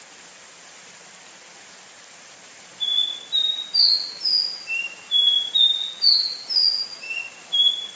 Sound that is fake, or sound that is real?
real